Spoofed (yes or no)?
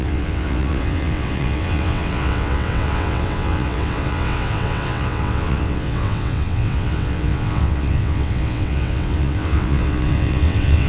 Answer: yes